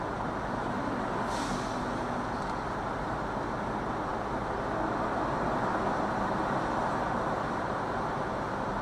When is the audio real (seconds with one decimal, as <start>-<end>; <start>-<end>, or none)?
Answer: 0.0-8.8